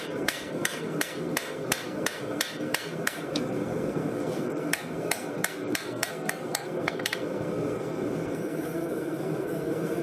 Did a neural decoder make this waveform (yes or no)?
yes